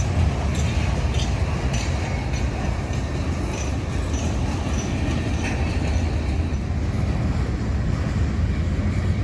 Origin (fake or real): real